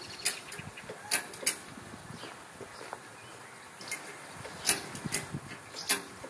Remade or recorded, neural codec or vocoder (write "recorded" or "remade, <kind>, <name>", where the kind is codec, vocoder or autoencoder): recorded